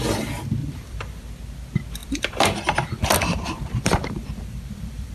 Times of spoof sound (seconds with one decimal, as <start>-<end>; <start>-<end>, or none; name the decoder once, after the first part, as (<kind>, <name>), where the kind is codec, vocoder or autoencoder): 0.6-1.3 (vocoder, BigVGAN v2); 2.0-5.1